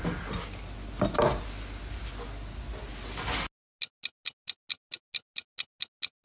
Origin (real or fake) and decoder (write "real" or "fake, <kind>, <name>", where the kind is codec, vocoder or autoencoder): real